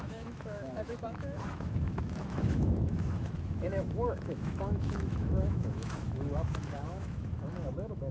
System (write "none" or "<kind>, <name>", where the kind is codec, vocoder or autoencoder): autoencoder, DAC-VAE